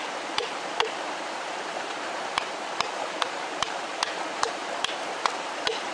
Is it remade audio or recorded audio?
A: remade